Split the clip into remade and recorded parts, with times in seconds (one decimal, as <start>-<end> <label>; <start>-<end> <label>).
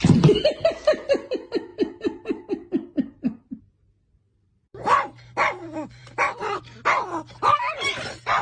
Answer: 0.0-4.3 recorded; 4.3-5.1 remade; 5.1-6.0 recorded; 6.0-6.6 remade; 6.6-8.4 recorded